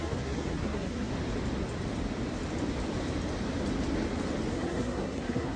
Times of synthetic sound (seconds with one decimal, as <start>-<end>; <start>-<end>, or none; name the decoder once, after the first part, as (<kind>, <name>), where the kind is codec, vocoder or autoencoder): 0.0-1.1 (codec, SNAC); 4.5-5.6